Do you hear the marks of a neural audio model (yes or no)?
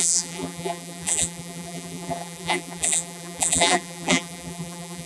yes